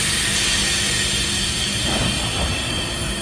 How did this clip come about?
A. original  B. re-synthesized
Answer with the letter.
A